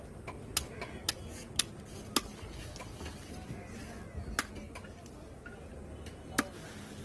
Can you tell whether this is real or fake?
real